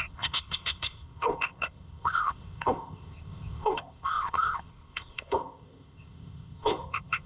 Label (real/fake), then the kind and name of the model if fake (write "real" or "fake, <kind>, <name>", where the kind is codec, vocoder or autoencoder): fake, codec, ZipCodec